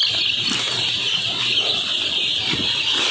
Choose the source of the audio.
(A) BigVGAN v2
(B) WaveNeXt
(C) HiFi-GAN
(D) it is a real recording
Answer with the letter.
D